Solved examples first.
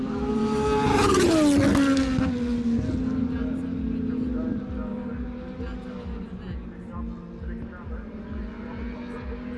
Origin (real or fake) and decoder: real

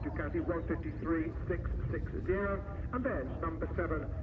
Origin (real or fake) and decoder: fake, vocoder, BigVGAN v2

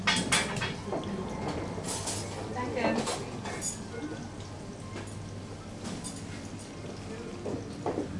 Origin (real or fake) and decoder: real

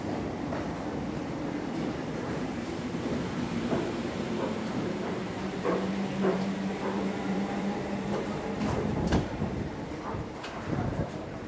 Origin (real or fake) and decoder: fake, vocoder, BigVGAN v2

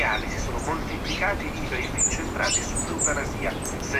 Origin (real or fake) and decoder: real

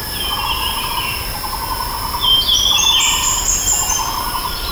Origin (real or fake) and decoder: fake, vocoder, BigVGAN v2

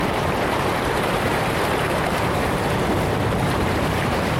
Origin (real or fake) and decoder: fake, vocoder, BigVGAN v2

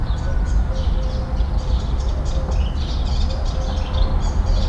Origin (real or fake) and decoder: real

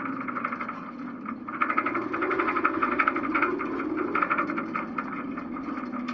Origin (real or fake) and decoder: real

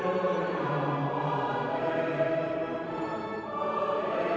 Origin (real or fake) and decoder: fake, vocoder, BigVGAN v2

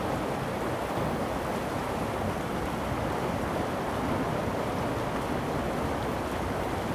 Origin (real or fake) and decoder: real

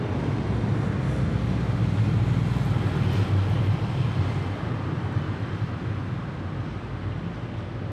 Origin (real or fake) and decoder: real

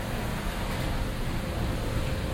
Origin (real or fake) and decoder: real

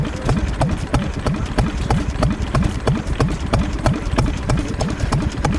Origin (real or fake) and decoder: fake, vocoder, BigVGAN v2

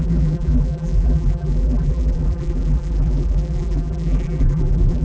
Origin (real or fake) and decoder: fake, vocoder, BigVGAN v2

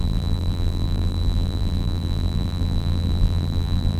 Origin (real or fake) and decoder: fake, vocoder, BigVGAN v2